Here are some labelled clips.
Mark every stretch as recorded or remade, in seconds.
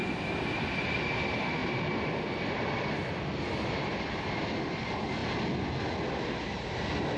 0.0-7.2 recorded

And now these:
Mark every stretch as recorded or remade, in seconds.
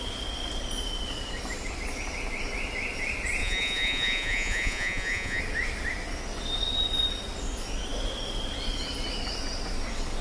0.0-3.4 recorded; 3.4-5.4 remade; 5.4-10.2 recorded